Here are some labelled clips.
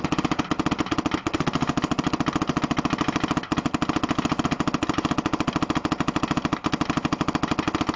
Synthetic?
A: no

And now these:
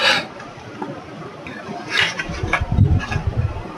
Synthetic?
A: yes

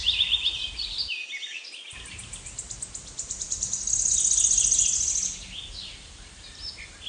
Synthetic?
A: no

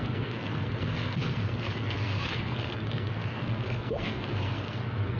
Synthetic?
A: yes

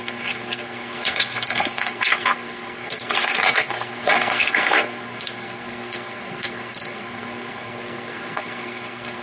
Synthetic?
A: yes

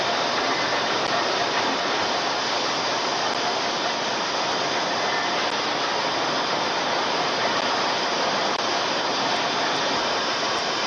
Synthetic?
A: no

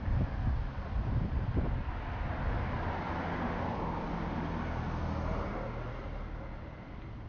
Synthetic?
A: no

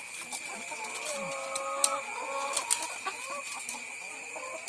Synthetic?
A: no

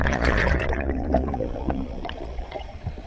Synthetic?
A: yes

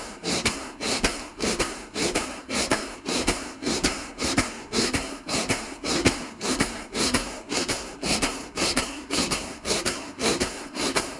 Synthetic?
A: yes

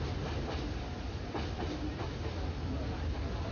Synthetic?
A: no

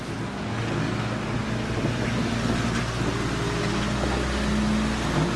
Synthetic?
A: no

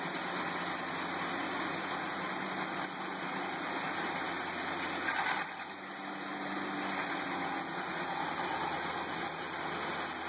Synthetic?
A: no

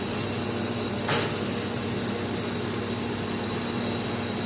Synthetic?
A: no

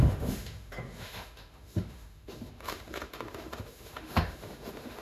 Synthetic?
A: yes